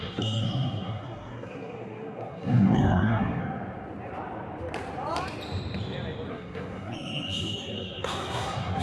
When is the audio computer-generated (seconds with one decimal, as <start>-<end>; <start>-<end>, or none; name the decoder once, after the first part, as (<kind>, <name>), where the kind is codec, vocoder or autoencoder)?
0.0-3.4 (codec, SNAC); 6.3-8.8